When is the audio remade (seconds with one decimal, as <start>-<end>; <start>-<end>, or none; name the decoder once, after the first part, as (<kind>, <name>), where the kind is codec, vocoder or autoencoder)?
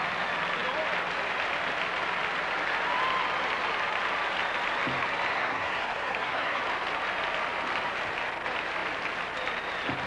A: 5.3-6.6 (codec, SNAC)